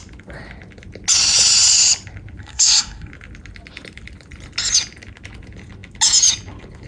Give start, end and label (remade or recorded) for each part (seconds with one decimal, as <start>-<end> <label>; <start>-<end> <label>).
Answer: 0.0-2.4 recorded; 2.4-3.1 remade; 3.1-6.9 recorded